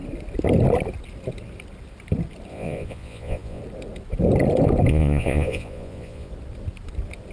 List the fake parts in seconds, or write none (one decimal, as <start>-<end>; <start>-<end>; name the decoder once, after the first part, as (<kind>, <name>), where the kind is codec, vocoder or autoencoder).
2.5-3.6 (vocoder, Vocos); 4.9-6.3